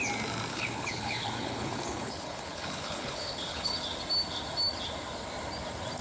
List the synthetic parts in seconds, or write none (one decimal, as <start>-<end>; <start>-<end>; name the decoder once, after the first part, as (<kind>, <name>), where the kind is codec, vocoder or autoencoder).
0.5-3.7 (codec, HILCodec)